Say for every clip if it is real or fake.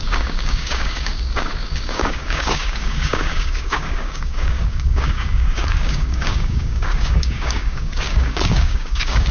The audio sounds fake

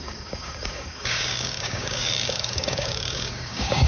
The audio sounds fake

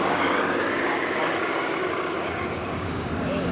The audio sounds fake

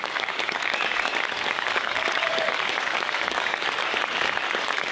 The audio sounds fake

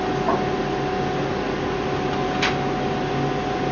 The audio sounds real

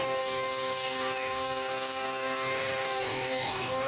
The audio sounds fake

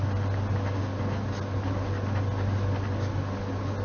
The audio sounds real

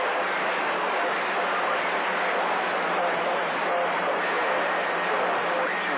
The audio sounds real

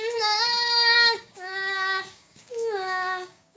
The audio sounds fake